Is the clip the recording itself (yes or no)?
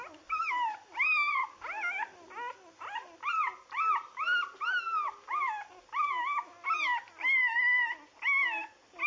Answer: yes